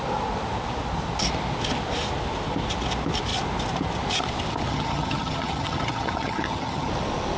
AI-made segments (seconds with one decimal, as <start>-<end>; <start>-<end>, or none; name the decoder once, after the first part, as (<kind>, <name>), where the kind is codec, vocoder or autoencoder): 4.7-6.9 (vocoder, HiFi-GAN)